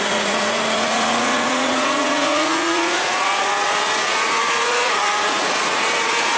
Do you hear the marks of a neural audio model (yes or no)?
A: yes